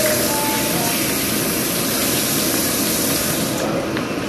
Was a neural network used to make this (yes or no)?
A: no